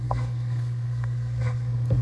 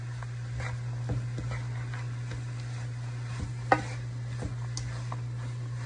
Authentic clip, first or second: second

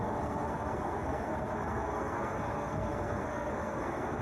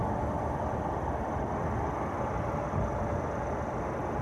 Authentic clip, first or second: second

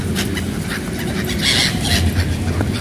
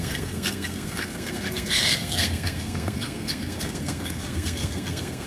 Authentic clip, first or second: first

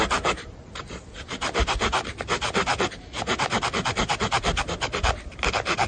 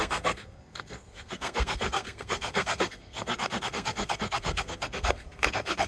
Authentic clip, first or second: first